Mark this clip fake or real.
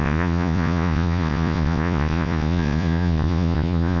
fake